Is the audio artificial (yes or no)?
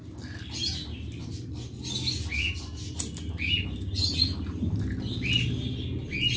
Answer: no